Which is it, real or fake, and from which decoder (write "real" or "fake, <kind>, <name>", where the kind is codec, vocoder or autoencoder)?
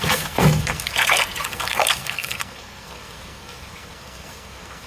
fake, codec, SNAC